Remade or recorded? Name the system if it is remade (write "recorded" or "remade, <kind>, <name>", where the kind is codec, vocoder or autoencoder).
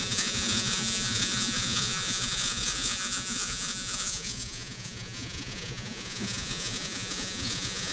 remade, vocoder, Vocos